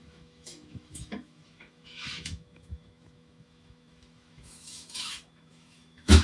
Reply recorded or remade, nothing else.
remade